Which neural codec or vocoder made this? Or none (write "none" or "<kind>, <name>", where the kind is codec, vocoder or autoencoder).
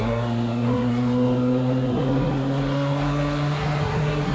codec, SNAC